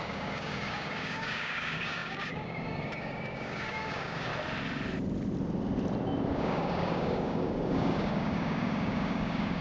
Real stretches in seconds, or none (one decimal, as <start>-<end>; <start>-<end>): 4.3-6.3